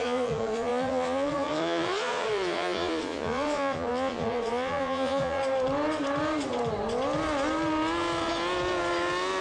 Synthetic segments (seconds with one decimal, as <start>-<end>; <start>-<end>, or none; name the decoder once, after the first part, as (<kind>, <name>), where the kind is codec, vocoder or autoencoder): 0.0-5.4 (vocoder, Vocos)